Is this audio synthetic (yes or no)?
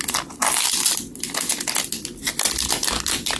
no